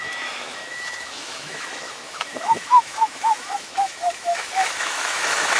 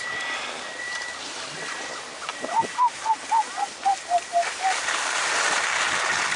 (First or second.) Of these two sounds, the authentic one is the second